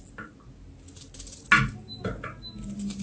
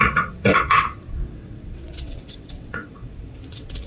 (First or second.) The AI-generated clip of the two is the second